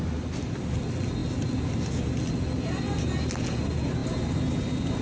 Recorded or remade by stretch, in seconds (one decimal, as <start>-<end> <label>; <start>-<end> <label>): 0.0-5.0 recorded